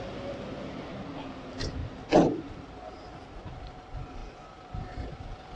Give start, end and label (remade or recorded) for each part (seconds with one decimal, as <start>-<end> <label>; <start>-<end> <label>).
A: 0.0-5.6 recorded